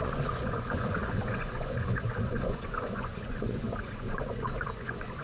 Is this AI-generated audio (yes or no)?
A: yes